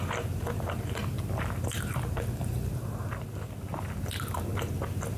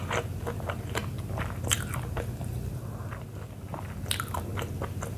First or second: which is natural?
second